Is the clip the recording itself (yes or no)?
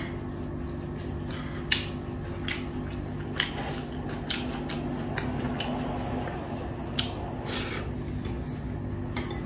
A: yes